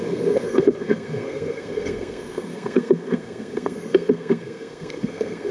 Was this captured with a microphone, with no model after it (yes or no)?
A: no